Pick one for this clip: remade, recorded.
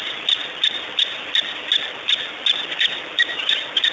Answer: recorded